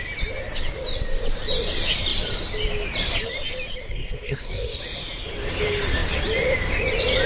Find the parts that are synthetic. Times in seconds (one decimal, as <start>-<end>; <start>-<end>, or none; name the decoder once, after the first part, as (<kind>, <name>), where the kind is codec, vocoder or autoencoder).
3.8-4.8 (codec, SNAC)